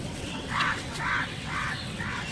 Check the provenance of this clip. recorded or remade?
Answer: remade